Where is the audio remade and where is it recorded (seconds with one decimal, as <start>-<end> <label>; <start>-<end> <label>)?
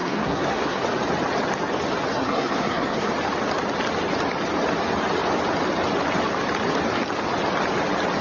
0.0-0.8 remade; 0.8-2.1 recorded; 2.1-3.1 remade; 3.1-8.2 recorded